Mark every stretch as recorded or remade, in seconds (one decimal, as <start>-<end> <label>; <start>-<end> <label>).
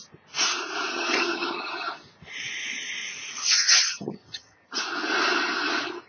0.0-0.9 recorded; 0.9-1.7 remade; 1.7-3.4 recorded; 3.4-4.8 remade; 4.8-6.1 recorded